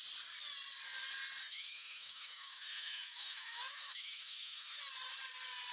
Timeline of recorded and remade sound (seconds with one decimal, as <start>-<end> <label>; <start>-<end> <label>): 0.0-1.4 recorded; 1.4-4.8 remade; 4.8-5.7 recorded